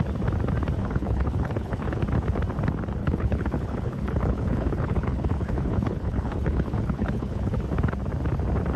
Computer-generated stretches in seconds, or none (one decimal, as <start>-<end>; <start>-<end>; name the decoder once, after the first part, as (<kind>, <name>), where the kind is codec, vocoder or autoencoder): 0.8-2.0 (codec, HILCodec); 3.0-7.6